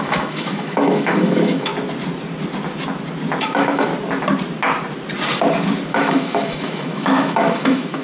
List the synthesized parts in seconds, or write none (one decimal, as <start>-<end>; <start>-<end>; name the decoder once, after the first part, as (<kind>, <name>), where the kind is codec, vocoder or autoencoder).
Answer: 0.0-1.7 (autoencoder, DAC-VAE); 3.4-3.9; 5.9-8.0